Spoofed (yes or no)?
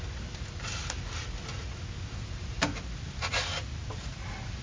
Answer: no